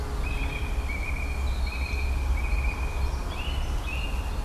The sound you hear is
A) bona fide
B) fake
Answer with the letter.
A